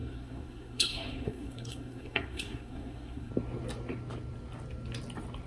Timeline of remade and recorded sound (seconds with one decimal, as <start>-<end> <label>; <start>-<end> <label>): 0.0-3.3 remade; 3.3-5.5 recorded